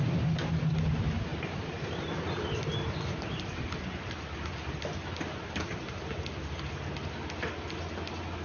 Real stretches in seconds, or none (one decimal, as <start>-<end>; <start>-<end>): 0.0-1.3; 2.1-8.4